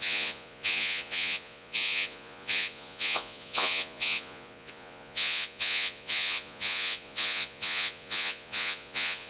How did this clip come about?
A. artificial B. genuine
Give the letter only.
A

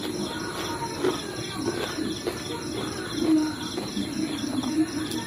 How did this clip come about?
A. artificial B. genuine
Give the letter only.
B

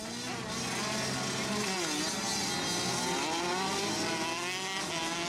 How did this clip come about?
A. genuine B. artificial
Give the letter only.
A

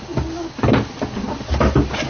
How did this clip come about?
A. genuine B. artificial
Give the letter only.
A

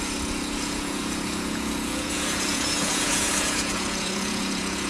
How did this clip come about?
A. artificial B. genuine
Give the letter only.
A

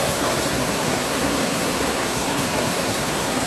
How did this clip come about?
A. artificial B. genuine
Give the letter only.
A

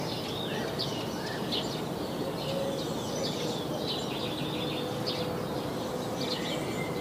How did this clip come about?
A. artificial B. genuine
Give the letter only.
B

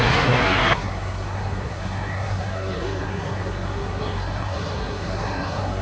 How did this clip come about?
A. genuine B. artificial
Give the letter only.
B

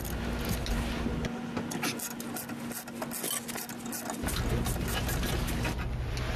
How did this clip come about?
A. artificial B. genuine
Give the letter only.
B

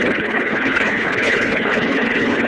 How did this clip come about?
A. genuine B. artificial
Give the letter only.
B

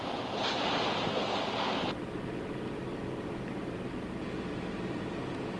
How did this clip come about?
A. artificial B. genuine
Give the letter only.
B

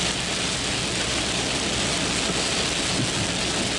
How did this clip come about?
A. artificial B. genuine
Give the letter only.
B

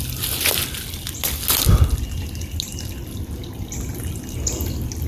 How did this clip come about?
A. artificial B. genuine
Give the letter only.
B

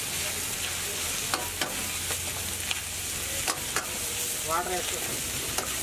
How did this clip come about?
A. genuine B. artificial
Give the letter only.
A